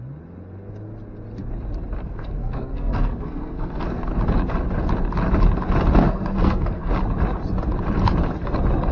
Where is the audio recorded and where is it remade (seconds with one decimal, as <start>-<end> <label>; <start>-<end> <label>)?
0.0-2.0 recorded; 2.0-4.1 remade; 4.1-6.0 recorded; 6.0-6.9 remade; 6.9-8.9 recorded